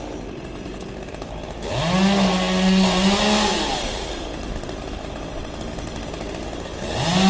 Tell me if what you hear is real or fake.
real